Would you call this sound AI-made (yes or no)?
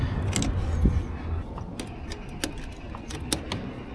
no